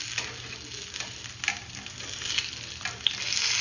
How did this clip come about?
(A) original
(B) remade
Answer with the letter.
A